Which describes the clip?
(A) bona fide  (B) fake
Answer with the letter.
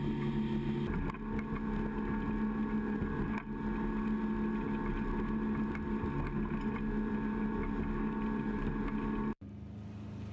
A